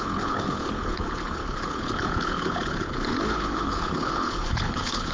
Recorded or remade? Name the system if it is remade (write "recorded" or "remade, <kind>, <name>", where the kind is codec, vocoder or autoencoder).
remade, codec, HILCodec